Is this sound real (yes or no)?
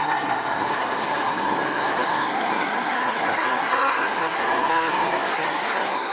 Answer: no